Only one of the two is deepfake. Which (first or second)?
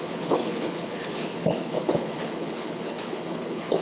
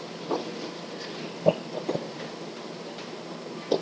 first